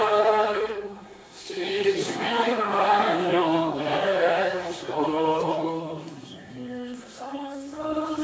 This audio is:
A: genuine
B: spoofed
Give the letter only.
B